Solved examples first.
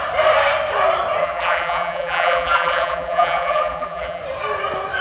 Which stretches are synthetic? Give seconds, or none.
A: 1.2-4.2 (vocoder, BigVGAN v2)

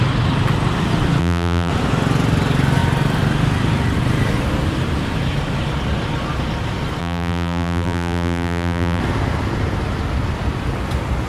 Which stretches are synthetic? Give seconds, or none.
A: 1.2-1.7 (vocoder, BigVGAN v2); 7.0-9.0

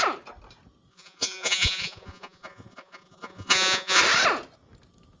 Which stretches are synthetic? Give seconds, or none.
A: 0.9-4.0 (vocoder, Vocos)

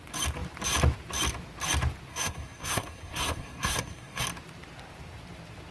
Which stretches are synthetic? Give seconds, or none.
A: 2.1-4.2 (codec, SNAC)

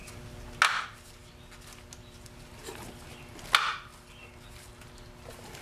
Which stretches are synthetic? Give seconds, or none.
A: none

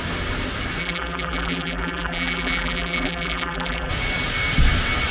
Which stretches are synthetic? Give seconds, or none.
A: 0.8-3.9 (vocoder, BigVGAN v2)

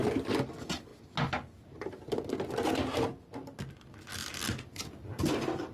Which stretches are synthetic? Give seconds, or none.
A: none

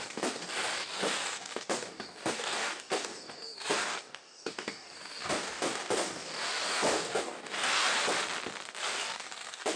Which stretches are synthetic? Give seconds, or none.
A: 0.0-7.9 (codec, DAC); 8.8-9.8